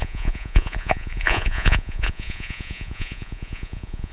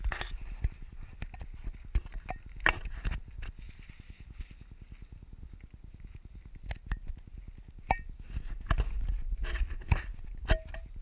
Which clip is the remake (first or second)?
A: first